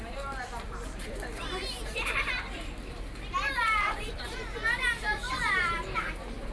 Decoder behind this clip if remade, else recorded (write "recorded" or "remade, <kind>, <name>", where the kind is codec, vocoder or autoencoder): remade, vocoder, BigVGAN v2